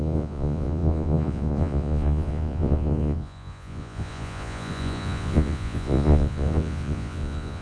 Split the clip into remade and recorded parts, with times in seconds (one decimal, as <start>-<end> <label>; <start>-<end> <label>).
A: 0.0-7.6 remade